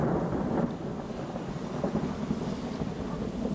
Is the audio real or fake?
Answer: real